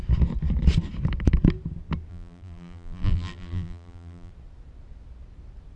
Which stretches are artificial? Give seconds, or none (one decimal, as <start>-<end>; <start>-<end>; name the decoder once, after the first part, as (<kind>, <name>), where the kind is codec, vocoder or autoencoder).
2.1-4.3 (vocoder, BigVGAN v2)